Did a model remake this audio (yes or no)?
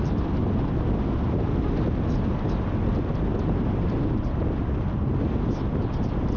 no